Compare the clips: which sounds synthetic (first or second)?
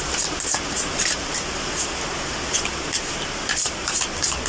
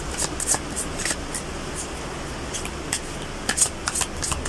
first